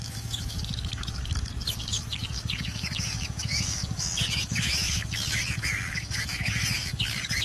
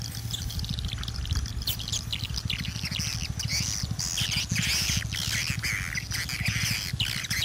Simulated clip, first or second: first